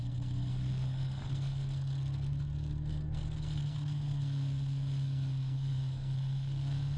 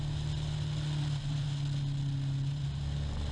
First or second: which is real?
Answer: second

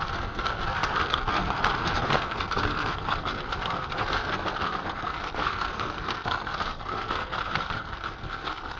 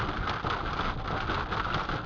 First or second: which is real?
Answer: second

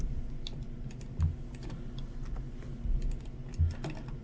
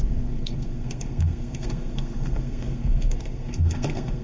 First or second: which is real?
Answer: first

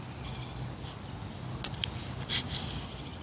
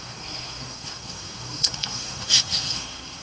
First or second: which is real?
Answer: first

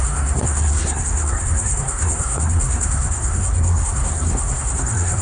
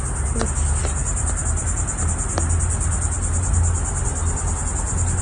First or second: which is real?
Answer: second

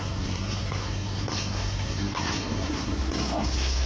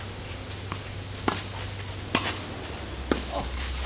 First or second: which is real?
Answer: second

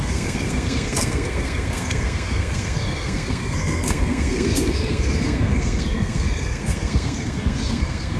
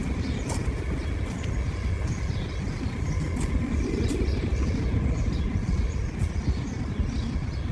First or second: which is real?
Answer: second